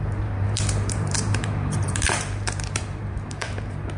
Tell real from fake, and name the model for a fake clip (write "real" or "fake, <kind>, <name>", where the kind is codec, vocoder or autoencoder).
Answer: fake, vocoder, BigVGAN v2